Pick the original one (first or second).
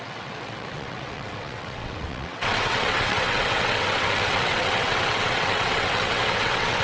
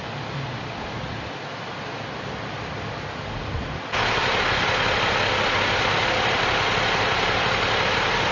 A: second